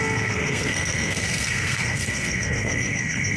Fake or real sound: fake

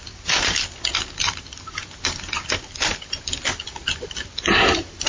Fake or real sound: real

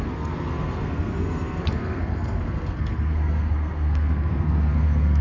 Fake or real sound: fake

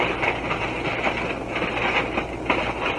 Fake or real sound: real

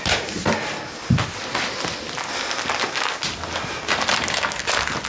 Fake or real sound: real